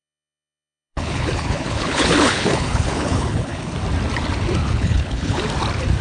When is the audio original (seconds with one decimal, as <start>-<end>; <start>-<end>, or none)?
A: 3.6-4.6; 5.4-6.0